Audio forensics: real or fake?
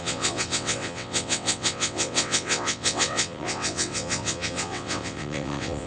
fake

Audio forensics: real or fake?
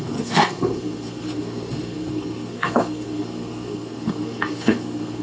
fake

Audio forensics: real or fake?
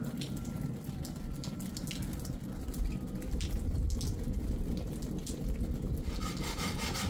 real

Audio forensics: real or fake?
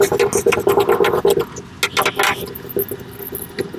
real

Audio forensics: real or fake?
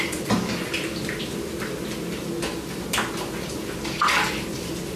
real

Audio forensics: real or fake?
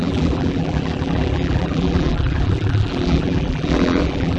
fake